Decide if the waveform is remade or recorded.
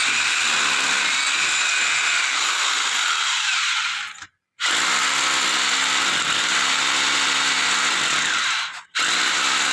recorded